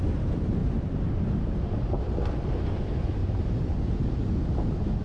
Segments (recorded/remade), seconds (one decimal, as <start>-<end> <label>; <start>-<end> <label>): 0.0-0.6 recorded; 0.6-2.8 remade; 2.8-3.2 recorded; 3.2-3.8 remade; 3.8-5.0 recorded